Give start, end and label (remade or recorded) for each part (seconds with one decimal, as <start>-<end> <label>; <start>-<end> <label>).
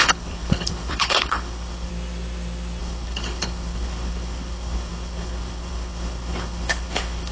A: 0.0-1.9 remade; 1.9-2.8 recorded; 2.8-7.3 remade